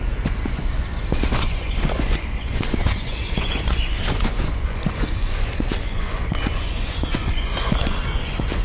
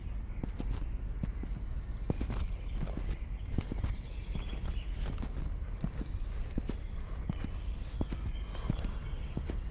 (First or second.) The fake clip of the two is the first